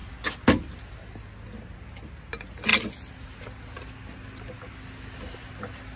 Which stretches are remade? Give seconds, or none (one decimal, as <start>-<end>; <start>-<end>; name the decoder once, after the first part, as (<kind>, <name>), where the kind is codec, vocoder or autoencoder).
none